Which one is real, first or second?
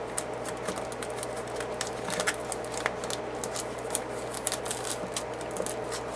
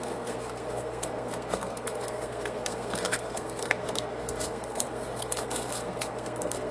first